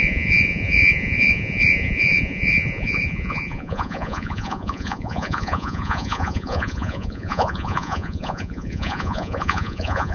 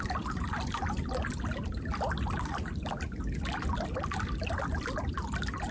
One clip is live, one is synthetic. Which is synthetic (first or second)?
first